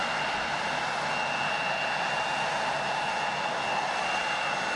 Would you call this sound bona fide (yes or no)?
yes